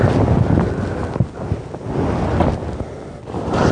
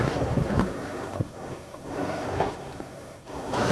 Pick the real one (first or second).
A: first